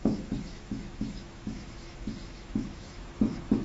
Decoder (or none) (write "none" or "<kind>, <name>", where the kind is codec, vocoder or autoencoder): autoencoder, DAC-VAE